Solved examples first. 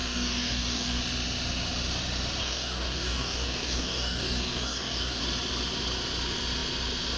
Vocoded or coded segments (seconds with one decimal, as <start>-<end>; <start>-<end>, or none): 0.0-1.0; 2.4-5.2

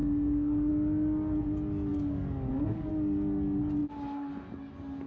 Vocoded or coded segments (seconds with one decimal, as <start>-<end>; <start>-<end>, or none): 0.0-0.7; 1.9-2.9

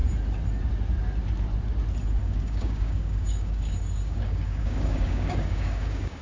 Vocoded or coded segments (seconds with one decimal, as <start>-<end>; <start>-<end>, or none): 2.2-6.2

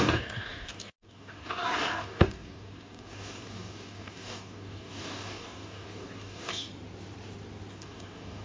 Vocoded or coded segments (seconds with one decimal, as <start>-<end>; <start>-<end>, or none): 0.0-6.7; 7.7-8.4